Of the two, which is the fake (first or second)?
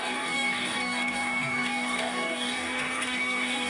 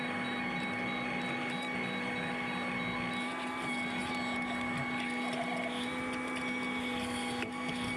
first